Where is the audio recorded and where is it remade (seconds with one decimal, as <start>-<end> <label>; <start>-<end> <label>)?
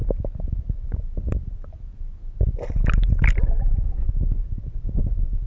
0.0-5.5 recorded